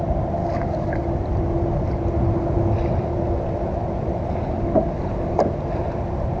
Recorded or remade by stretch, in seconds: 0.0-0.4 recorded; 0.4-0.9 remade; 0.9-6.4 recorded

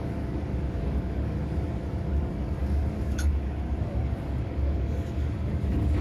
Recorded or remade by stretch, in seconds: 0.0-6.0 remade

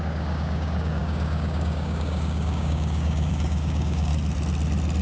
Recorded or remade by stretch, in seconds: 0.0-4.1 remade; 4.1-5.0 recorded

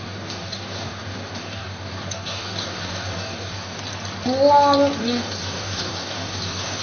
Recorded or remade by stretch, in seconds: 0.0-3.8 remade; 3.8-5.0 recorded; 5.0-6.8 remade

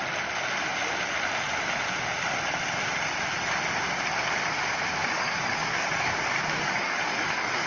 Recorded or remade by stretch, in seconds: 0.0-5.0 recorded; 5.0-7.7 remade

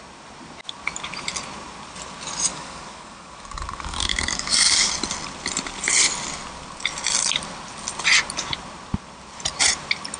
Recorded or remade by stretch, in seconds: 0.0-2.5 recorded; 2.5-4.9 remade; 4.9-10.2 recorded